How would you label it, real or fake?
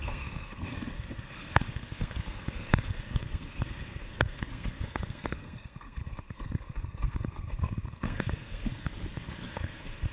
fake